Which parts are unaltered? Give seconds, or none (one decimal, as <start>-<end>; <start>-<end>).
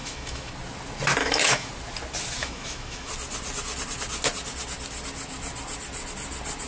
0.5-1.2; 1.7-2.4; 3.1-6.7